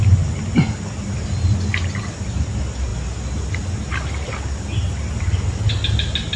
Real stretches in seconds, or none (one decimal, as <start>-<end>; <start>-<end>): 0.0-6.4

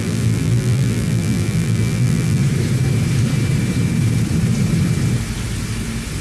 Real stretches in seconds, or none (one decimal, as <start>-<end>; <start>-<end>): 2.4-6.2

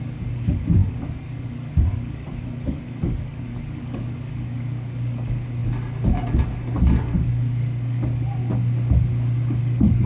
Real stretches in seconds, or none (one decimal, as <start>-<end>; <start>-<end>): 8.4-9.6

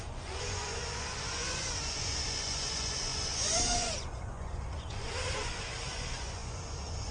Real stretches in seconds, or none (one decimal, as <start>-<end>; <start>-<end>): none